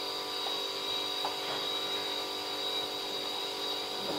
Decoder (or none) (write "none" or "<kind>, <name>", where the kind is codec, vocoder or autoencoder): none